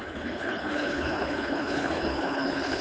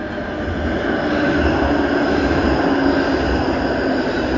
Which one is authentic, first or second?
second